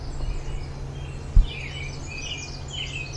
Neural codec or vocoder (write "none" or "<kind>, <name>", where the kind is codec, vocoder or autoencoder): none